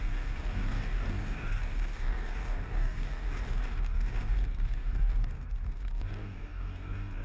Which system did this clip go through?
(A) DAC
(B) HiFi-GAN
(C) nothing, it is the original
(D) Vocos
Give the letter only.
A